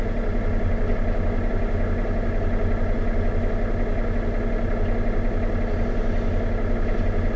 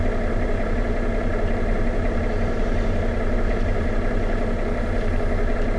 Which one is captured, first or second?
first